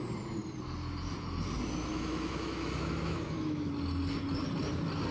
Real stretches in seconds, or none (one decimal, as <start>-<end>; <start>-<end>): 0.0-1.9; 3.7-5.1